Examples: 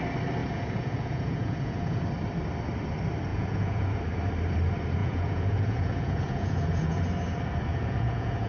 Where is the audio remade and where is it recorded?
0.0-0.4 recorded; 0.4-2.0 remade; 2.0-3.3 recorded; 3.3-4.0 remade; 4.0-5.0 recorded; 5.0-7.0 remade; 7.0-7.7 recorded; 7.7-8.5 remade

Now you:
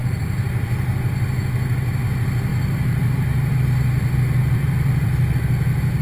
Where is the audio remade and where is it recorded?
0.0-1.4 remade; 1.4-2.5 recorded; 2.5-5.4 remade; 5.4-6.0 recorded

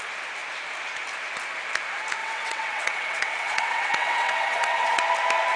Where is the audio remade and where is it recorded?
0.0-2.2 recorded; 2.2-5.0 remade; 5.0-5.6 recorded

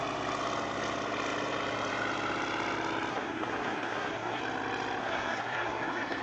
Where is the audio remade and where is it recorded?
0.0-3.1 recorded; 3.1-4.4 remade; 4.4-5.0 recorded; 5.0-6.2 remade

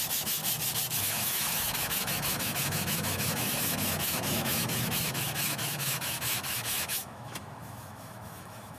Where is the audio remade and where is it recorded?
0.0-0.4 remade; 0.4-1.0 recorded; 1.0-8.8 remade

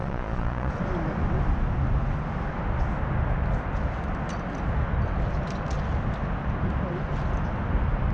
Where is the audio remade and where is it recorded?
0.0-0.7 remade; 0.7-8.1 recorded

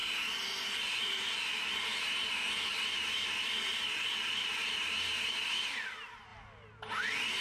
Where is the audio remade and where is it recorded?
0.0-7.4 recorded

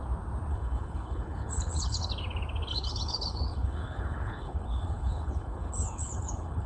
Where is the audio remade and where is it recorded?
0.0-0.5 recorded; 0.5-2.1 remade; 2.1-2.7 recorded; 2.7-6.7 remade